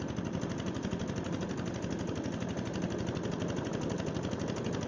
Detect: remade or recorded recorded